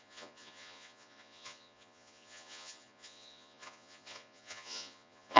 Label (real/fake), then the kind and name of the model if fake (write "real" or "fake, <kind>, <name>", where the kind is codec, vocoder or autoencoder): fake, vocoder, Vocos